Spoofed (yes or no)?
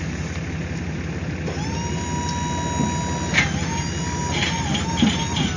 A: no